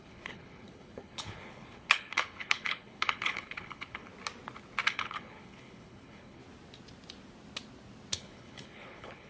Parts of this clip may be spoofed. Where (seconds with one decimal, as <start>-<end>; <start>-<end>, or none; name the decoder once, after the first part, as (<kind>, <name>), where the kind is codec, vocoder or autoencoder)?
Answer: 0.0-4.1 (codec, HILCodec); 4.9-6.4; 8.1-9.3